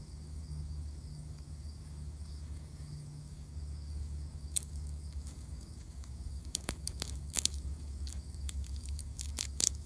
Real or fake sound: fake